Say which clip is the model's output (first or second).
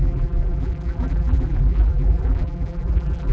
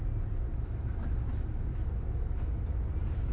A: first